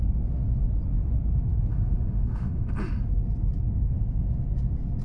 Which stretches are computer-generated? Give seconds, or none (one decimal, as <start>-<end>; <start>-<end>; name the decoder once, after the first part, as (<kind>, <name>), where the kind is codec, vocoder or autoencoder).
1.7-2.7 (autoencoder, DAC-VAE)